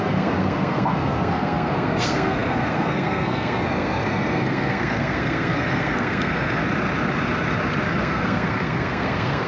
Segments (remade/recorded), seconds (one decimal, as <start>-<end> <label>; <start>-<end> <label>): 0.0-6.6 remade; 6.6-8.0 recorded; 8.0-9.5 remade